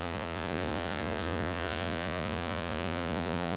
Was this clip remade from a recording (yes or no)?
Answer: yes